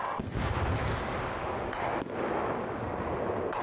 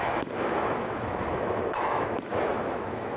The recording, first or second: first